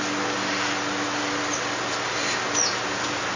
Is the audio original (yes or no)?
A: yes